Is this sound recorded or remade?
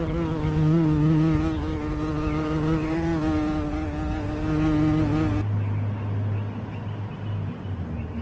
recorded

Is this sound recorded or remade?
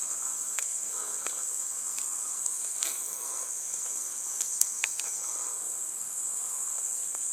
remade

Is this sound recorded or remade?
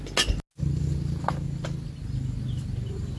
recorded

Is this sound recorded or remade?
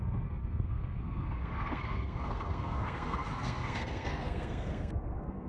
remade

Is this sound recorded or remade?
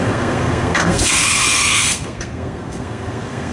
remade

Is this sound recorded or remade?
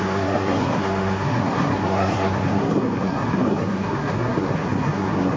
remade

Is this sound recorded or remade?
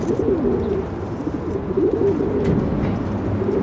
recorded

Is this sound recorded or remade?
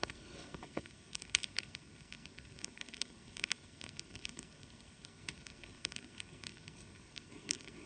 remade